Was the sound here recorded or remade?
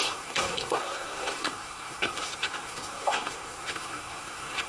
remade